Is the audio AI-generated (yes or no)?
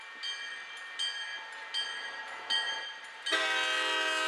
no